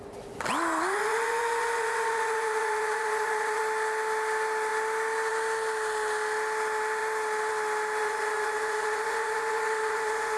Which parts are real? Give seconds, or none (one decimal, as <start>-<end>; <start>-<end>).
0.0-0.8; 3.6-8.0

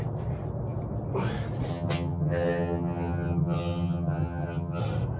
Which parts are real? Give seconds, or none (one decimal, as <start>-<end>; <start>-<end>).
0.0-1.7; 4.8-5.2

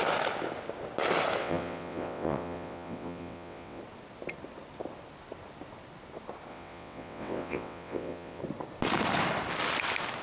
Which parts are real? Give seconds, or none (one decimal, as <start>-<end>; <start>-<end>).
0.0-1.4; 3.8-6.5; 8.4-10.2

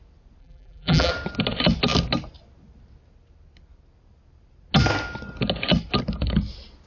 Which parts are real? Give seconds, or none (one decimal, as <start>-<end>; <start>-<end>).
0.0-0.4; 1.1-6.9

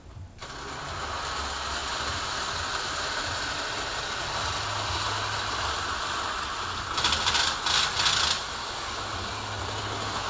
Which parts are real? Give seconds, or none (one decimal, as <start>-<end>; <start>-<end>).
0.0-10.3

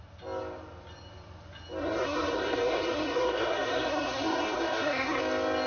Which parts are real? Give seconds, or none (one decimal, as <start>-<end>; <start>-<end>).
0.0-1.8; 5.2-5.7

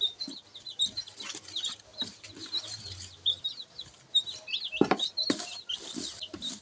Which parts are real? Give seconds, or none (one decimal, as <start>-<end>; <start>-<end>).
0.0-6.6